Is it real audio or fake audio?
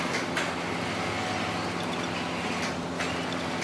real